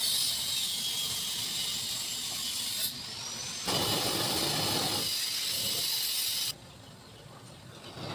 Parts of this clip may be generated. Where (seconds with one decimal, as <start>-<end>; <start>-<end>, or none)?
none